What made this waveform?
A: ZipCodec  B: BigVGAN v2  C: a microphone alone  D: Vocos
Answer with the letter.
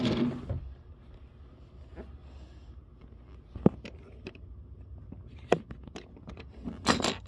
C